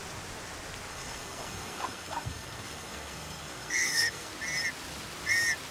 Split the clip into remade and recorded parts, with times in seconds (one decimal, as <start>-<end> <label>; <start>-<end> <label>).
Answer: 0.0-0.9 recorded; 0.9-4.3 remade; 4.3-5.7 recorded